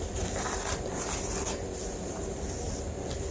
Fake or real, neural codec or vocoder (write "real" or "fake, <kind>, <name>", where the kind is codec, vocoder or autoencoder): fake, vocoder, BigVGAN v2